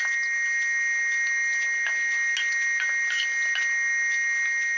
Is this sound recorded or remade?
recorded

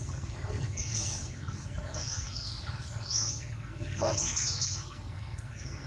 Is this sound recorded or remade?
remade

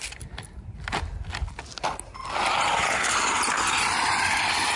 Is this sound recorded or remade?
recorded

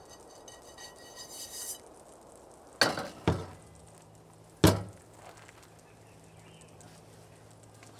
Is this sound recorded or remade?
recorded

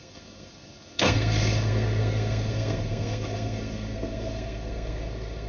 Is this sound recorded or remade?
remade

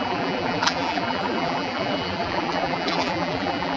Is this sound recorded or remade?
remade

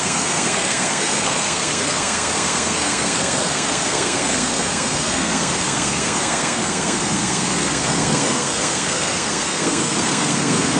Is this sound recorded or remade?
remade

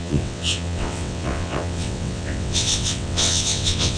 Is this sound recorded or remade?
remade